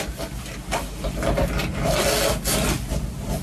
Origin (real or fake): real